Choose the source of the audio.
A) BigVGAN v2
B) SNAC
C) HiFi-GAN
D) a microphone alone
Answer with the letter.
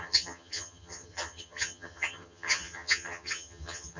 C